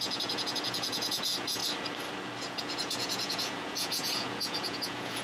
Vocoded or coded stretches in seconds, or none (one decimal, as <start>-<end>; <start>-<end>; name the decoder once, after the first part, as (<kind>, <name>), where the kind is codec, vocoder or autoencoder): 0.0-1.6 (vocoder, Vocos); 2.4-5.2